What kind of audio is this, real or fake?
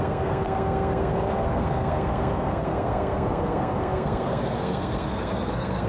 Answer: fake